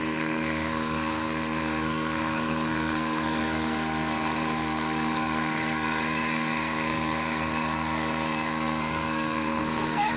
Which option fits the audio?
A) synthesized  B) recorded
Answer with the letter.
A